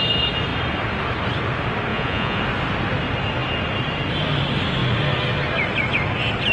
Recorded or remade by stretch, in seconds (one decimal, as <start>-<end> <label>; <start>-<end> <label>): 0.0-1.9 recorded; 1.9-2.4 remade; 2.4-6.5 recorded

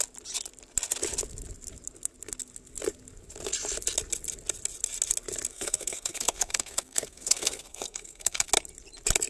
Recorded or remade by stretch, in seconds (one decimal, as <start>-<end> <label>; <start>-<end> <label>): 0.0-5.5 recorded; 5.5-8.5 remade; 8.5-9.3 recorded

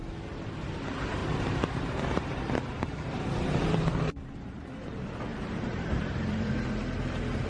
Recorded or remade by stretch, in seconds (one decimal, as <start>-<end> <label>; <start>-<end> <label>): 0.0-1.2 recorded; 1.2-2.5 remade; 2.5-2.9 recorded; 2.9-4.6 remade; 4.6-5.3 recorded; 5.3-6.5 remade; 6.5-7.5 recorded

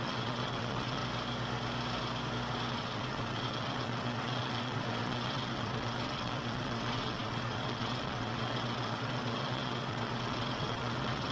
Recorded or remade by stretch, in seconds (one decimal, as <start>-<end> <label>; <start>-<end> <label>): 0.0-1.0 remade; 1.0-2.7 recorded; 2.7-11.3 remade

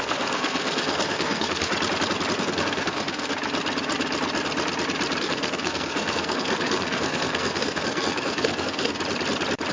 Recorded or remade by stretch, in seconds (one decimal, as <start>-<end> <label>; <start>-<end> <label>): 0.0-1.7 remade; 1.7-2.4 recorded; 2.4-3.3 remade; 3.3-5.2 recorded; 5.2-8.9 remade; 8.9-9.7 recorded

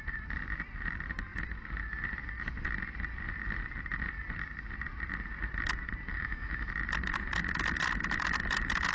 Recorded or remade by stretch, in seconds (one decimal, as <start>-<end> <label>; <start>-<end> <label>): 0.0-6.1 recorded; 6.1-6.7 remade; 6.7-8.9 recorded

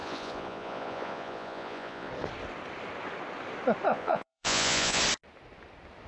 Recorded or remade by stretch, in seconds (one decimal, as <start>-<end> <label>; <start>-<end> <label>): 0.0-2.1 remade; 2.1-3.9 recorded; 3.9-5.0 remade; 5.0-6.1 recorded

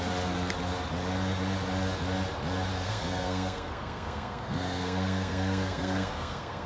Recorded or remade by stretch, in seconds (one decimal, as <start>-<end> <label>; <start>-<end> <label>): 0.0-2.7 recorded; 2.7-6.7 remade